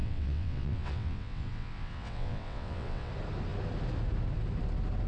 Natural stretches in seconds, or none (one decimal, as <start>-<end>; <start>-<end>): 3.1-5.1